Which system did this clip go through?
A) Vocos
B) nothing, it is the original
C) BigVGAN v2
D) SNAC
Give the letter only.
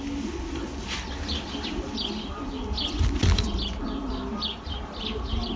B